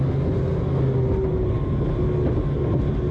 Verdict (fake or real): real